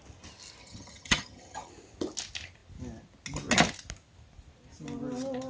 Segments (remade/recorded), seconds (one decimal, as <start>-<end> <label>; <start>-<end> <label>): 0.0-0.6 recorded; 0.6-1.7 remade; 1.7-5.5 recorded